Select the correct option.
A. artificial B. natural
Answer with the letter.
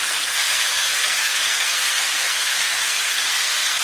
A